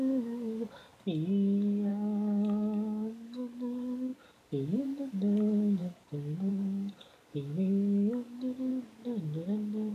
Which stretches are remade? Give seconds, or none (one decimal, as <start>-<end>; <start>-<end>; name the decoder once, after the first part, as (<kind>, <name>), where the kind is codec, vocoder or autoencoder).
0.0-0.9 (codec, DAC); 1.9-8.7